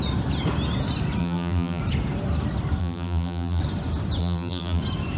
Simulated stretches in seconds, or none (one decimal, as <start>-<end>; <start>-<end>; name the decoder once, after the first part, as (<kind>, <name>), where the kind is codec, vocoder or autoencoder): 1.2-1.8 (vocoder, BigVGAN v2); 2.8-3.6; 4.2-4.8